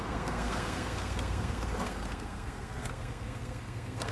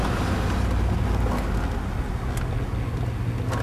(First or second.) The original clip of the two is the second